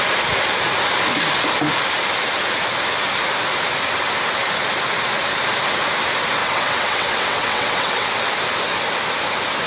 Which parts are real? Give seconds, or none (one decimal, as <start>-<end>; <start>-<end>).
0.0-6.4; 8.1-9.7